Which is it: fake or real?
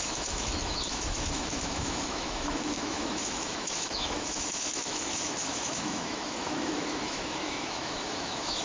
fake